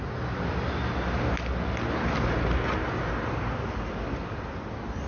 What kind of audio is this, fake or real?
real